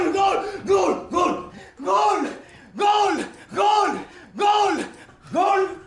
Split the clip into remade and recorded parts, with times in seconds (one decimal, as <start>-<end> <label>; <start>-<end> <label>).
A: 0.0-5.9 recorded